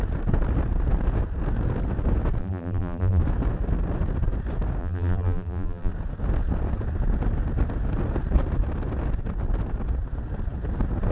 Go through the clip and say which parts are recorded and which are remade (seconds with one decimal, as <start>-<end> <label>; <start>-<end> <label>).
0.0-2.4 recorded; 2.4-3.2 remade; 3.2-4.8 recorded; 4.8-5.9 remade; 5.9-11.1 recorded